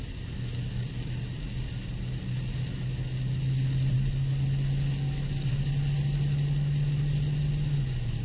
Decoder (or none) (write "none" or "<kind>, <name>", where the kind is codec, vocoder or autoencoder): none